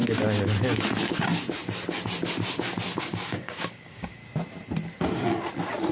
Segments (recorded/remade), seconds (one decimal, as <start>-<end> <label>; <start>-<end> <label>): 0.0-3.0 recorded; 3.0-4.2 remade; 4.2-5.9 recorded